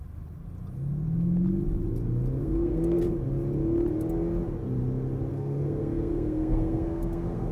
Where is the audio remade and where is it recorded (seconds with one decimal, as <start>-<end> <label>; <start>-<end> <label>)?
0.0-2.4 recorded; 2.4-3.0 remade; 3.0-5.3 recorded; 5.3-7.5 remade